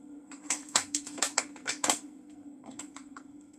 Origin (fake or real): fake